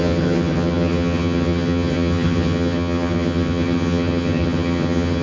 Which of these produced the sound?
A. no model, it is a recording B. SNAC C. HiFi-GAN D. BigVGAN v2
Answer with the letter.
C